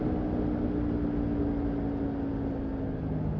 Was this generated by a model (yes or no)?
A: no